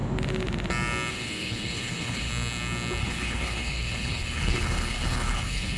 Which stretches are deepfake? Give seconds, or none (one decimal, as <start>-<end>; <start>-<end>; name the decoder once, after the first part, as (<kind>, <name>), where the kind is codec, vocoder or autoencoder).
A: 1.1-2.3 (codec, HILCodec); 3.0-5.8

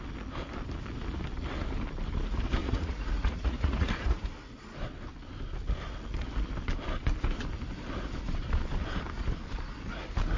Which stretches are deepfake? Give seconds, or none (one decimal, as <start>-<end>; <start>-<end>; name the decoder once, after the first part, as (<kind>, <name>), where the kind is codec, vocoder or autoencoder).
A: 2.6-3.9 (vocoder, Vocos)

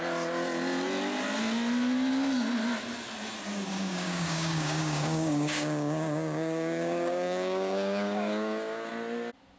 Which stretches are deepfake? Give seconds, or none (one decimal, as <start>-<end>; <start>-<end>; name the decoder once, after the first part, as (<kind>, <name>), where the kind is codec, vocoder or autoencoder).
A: 3.7-8.9 (codec, DAC)

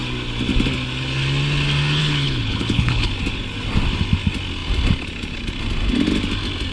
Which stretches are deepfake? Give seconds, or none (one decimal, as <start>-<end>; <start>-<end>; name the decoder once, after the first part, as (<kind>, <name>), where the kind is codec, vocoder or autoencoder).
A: 2.0-3.1 (codec, HILCodec)

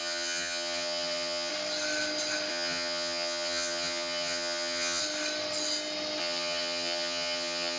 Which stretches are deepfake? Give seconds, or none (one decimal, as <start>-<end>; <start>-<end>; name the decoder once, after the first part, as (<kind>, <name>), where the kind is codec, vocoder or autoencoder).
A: 0.0-1.5 (vocoder, HiFi-GAN); 2.5-5.0; 6.2-7.8

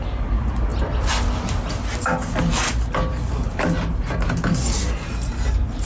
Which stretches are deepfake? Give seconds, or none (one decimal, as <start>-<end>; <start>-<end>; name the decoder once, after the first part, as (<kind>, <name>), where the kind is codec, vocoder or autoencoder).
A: none

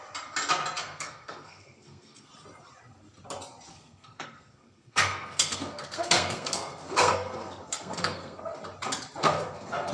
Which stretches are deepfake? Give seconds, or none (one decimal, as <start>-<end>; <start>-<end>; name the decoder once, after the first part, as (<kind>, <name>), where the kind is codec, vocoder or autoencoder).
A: 0.8-2.3 (codec, SNAC); 3.7-8.4; 9.2-9.9